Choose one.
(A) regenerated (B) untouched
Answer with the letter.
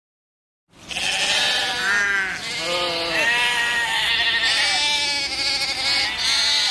B